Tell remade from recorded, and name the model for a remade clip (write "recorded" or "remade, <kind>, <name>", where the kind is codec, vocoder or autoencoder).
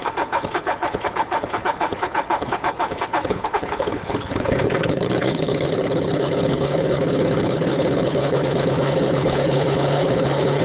remade, codec, HILCodec